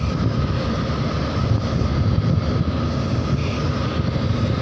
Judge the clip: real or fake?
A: real